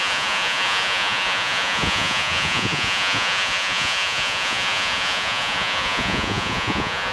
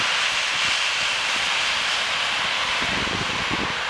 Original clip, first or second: second